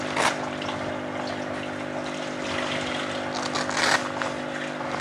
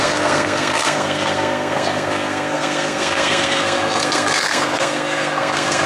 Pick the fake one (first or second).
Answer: second